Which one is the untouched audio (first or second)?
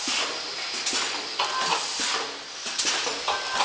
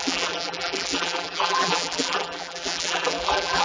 first